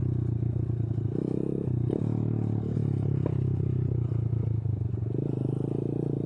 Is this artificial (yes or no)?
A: no